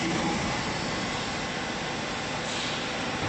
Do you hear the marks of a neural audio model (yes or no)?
no